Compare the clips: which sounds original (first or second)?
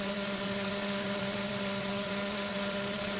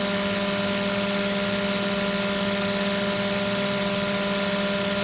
second